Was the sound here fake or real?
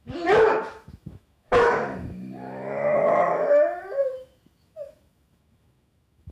fake